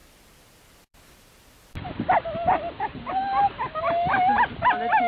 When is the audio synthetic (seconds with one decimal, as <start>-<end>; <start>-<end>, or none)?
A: 0.0-3.1